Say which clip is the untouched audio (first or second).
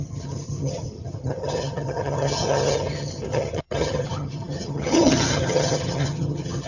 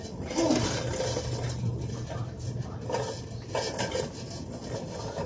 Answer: second